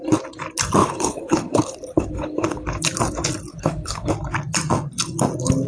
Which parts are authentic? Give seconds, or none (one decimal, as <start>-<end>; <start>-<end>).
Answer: 0.0-0.8; 2.8-3.5; 4.1-5.7